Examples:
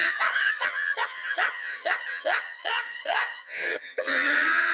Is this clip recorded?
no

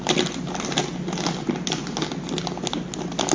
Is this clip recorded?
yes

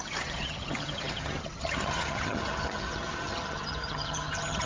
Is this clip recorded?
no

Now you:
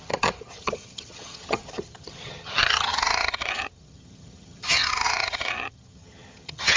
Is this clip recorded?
no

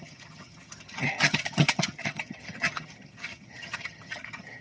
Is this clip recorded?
no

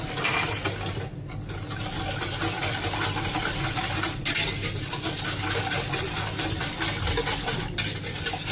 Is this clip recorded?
yes